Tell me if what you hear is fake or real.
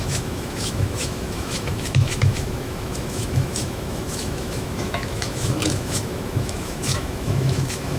fake